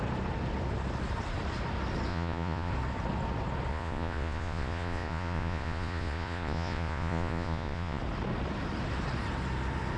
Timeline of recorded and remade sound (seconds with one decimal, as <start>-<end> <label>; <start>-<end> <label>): 0.0-2.1 recorded; 2.1-2.7 remade; 2.7-3.7 recorded; 3.7-8.0 remade; 8.0-10.0 recorded